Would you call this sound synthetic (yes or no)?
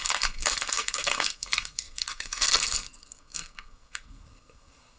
yes